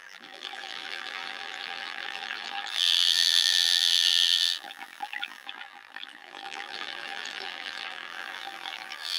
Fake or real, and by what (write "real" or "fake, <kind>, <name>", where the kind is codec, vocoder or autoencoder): fake, vocoder, BigVGAN v2